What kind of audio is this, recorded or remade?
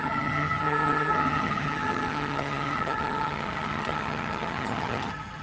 remade